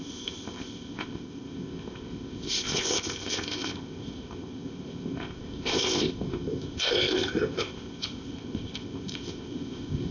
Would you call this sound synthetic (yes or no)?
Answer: yes